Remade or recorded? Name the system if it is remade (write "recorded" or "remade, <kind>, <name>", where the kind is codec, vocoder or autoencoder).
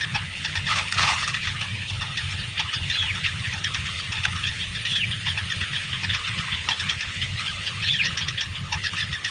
remade, codec, HILCodec